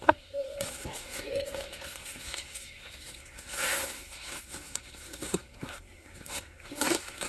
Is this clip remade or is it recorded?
remade